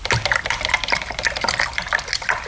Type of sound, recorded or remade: recorded